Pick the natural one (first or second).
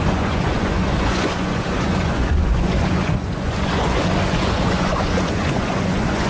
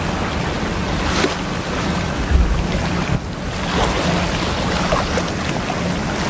second